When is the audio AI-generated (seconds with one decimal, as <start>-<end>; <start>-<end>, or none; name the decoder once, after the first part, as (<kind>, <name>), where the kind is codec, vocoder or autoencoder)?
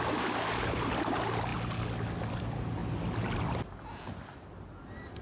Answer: none